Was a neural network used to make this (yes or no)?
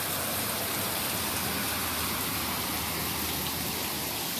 no